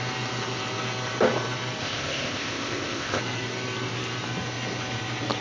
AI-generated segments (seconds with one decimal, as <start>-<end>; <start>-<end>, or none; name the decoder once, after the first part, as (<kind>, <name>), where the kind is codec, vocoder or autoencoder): 1.8-3.2 (codec, ZipCodec)